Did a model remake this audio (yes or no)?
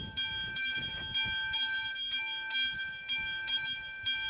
yes